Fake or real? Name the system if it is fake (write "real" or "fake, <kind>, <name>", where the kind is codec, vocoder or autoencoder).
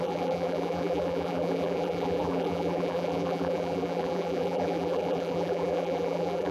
fake, vocoder, BigVGAN v2